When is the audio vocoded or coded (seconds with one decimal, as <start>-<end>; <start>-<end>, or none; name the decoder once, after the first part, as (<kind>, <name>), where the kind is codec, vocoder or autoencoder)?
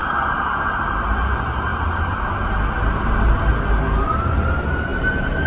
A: none